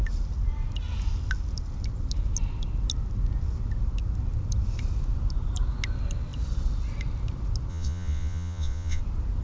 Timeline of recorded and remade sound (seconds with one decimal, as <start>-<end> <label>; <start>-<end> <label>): 0.0-7.7 recorded; 7.7-9.0 remade; 9.0-9.4 recorded

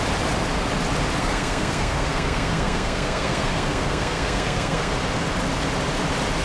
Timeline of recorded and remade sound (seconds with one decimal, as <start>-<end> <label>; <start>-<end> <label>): 0.0-1.2 recorded; 1.2-4.9 remade; 4.9-6.4 recorded

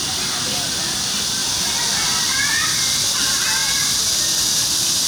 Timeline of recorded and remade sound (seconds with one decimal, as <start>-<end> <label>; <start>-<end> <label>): 0.0-5.1 recorded

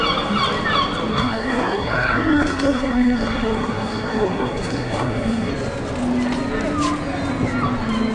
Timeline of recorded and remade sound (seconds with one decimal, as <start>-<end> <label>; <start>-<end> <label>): 0.0-1.1 recorded; 1.1-5.5 remade; 5.5-8.1 recorded

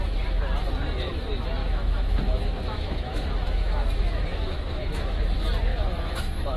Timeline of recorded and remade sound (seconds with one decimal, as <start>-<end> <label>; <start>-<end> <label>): 0.0-1.6 recorded; 1.6-5.2 remade; 5.2-5.7 recorded; 5.7-6.6 remade

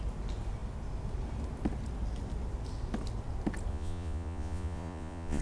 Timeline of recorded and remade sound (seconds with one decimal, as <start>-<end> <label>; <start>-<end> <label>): 0.0-3.7 recorded; 3.7-5.4 remade

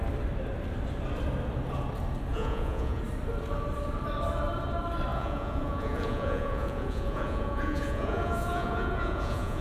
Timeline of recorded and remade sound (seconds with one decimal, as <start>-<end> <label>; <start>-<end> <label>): 0.0-2.3 recorded; 2.3-3.0 remade; 3.0-5.1 recorded; 5.1-9.6 remade

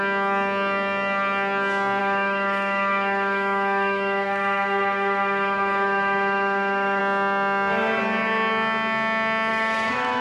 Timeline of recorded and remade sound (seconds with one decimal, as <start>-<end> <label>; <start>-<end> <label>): 0.0-2.0 recorded; 2.0-7.0 remade; 7.0-9.5 recorded; 9.5-10.2 remade